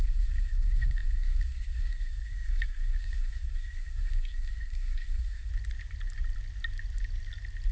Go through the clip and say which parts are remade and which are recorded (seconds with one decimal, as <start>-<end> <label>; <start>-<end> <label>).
0.0-5.5 remade; 5.5-7.7 recorded